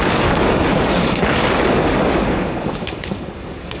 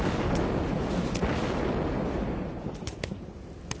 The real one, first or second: second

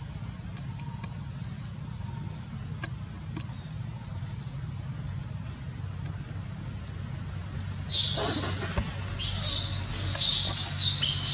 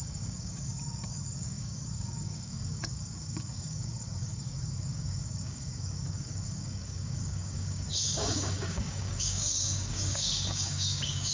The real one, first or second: first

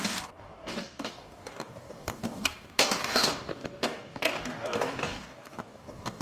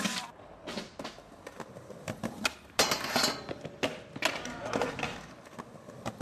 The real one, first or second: second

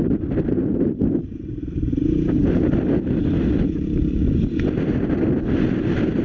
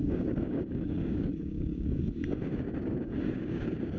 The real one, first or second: first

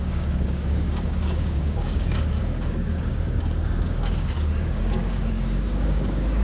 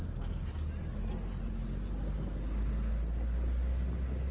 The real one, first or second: second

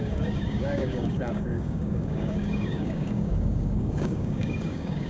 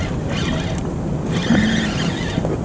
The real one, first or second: second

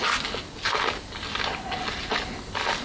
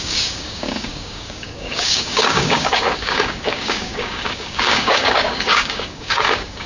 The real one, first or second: first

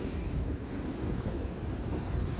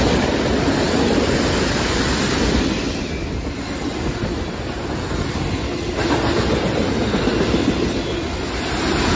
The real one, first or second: second